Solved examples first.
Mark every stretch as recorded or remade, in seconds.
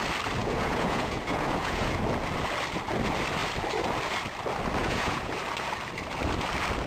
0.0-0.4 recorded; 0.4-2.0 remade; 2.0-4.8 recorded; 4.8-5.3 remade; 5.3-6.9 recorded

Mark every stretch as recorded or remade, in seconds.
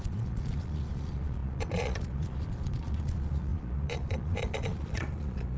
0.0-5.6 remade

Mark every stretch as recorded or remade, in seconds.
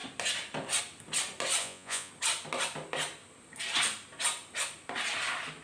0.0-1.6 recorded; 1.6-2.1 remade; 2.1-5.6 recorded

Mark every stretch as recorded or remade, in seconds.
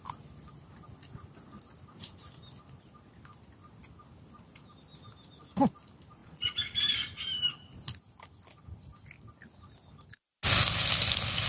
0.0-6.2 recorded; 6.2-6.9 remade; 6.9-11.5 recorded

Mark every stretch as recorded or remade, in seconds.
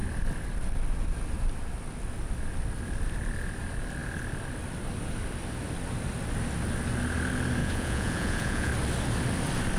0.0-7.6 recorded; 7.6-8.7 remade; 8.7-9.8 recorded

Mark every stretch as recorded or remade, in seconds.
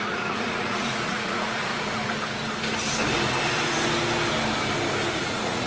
0.0-1.7 remade; 1.7-5.1 recorded; 5.1-5.7 remade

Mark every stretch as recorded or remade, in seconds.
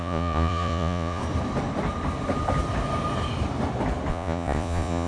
0.0-1.2 remade; 1.2-4.1 recorded; 4.1-5.1 remade